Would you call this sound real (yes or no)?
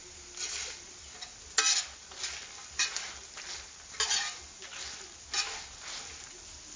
yes